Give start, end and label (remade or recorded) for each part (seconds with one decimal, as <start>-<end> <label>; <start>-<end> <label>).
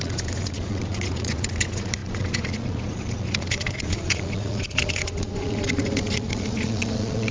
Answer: 0.0-7.3 remade